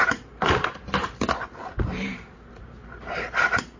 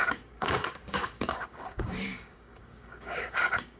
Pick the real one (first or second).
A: first